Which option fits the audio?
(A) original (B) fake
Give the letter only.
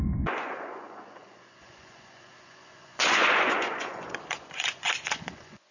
B